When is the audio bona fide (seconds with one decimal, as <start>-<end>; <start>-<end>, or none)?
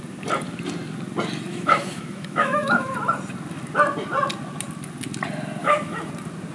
0.0-1.5; 2.9-5.6; 6.1-6.5